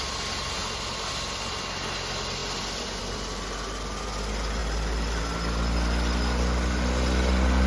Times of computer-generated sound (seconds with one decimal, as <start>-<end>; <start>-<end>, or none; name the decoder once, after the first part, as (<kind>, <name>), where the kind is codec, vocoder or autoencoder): 0.6-1.1 (vocoder, BigVGAN v2); 2.4-3.0